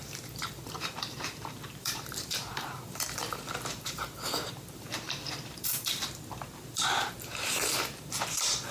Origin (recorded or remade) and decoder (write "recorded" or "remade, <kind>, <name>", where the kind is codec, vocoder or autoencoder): remade, vocoder, BigVGAN v2